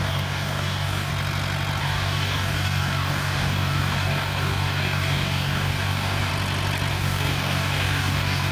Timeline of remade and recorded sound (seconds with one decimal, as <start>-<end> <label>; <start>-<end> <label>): 0.0-1.1 remade; 1.1-1.8 recorded; 1.8-6.3 remade; 6.3-6.9 recorded; 6.9-8.5 remade